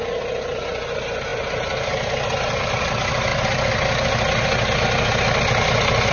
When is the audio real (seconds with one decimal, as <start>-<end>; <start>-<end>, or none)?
0.0-6.1